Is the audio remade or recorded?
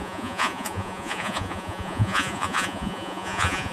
remade